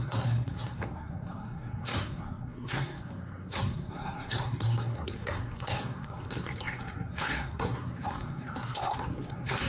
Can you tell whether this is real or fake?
fake